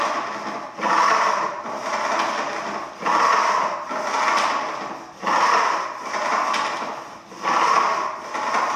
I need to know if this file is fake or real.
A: real